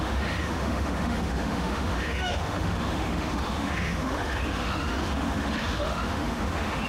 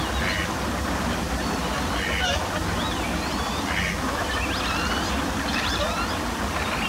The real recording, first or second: second